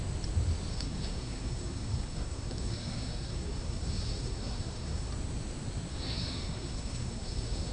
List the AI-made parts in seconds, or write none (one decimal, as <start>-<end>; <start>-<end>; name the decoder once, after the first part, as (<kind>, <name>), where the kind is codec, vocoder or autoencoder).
0.7-5.1 (codec, SNAC); 5.9-7.7